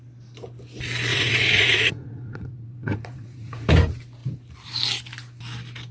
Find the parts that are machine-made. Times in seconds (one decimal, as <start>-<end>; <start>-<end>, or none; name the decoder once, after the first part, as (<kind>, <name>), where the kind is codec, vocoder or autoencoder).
1.1-3.7 (vocoder, Vocos)

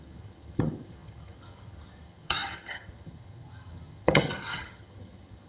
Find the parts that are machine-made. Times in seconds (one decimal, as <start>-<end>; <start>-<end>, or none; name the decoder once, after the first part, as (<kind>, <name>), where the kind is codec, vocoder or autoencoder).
0.0-5.5 (vocoder, HiFi-GAN)

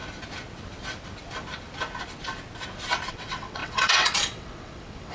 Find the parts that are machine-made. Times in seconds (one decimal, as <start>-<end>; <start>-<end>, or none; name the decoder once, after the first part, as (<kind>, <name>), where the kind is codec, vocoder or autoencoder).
3.1-5.1 (vocoder, WaveNeXt)

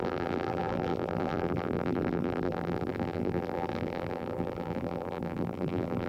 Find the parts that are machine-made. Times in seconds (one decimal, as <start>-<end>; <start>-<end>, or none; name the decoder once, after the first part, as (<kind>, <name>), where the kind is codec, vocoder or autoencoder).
0.0-6.1 (vocoder, BigVGAN v2)

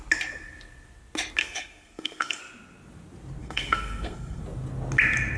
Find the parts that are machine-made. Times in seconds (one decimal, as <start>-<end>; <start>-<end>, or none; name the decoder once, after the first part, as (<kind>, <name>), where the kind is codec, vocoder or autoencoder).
1.4-2.4 (codec, SNAC); 3.4-4.4

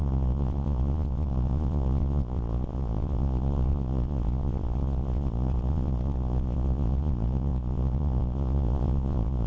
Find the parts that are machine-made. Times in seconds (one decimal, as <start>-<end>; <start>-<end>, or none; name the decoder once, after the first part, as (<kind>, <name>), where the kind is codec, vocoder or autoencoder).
0.0-9.5 (vocoder, Vocos)